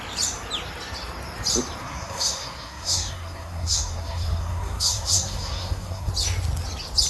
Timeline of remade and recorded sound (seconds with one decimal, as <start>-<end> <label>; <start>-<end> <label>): 0.0-1.8 recorded; 1.8-6.1 remade; 6.1-7.1 recorded